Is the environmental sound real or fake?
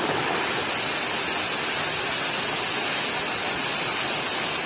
real